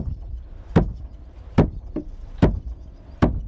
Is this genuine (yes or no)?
no